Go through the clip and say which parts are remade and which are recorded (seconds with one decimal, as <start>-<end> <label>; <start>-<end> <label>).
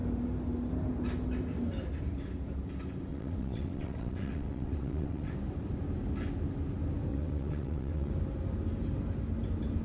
0.0-3.1 recorded; 3.1-5.3 remade; 5.3-7.1 recorded; 7.1-8.1 remade; 8.1-9.8 recorded